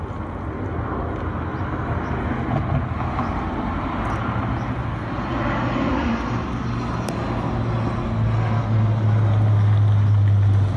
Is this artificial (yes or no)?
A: no